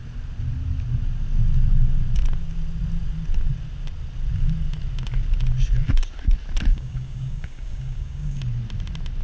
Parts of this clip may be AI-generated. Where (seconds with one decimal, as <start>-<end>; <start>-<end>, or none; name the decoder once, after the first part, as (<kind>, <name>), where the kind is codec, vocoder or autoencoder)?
6.7-8.4 (codec, DAC)